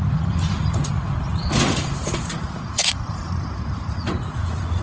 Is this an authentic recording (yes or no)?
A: no